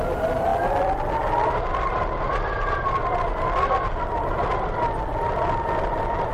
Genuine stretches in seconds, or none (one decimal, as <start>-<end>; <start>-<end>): 0.0-6.3